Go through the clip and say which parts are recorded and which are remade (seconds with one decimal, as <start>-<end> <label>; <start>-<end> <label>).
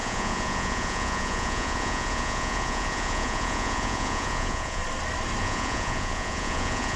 0.0-4.8 remade; 4.8-5.4 recorded; 5.4-7.0 remade